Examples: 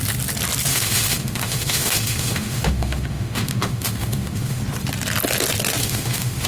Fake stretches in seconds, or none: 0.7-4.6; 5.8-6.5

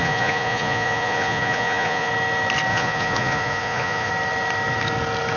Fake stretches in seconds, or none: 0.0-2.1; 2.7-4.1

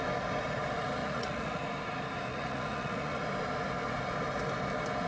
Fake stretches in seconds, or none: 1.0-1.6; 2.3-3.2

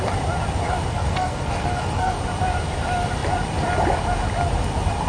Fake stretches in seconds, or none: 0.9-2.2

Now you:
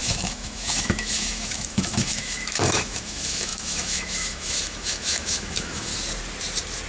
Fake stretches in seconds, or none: 0.0-5.9

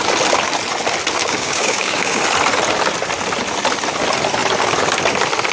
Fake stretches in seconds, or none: 1.2-2.2

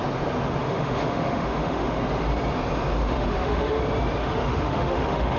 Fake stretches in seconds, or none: 0.6-2.0; 3.0-3.8; 4.2-5.4